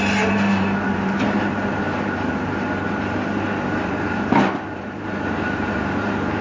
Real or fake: fake